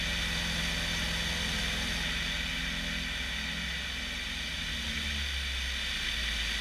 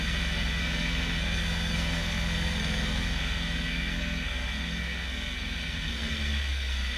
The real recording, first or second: first